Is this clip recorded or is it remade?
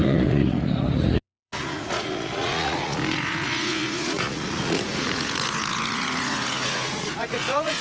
remade